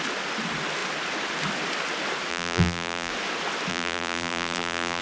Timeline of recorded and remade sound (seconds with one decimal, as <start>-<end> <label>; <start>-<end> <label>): 0.0-2.3 recorded; 2.3-3.1 remade; 3.1-3.7 recorded; 3.7-5.0 remade